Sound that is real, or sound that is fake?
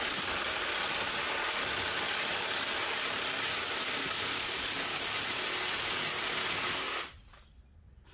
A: real